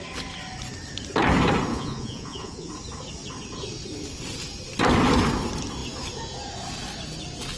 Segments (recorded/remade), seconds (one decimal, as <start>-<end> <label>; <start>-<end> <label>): 0.0-1.7 recorded; 1.7-2.7 remade; 2.7-7.6 recorded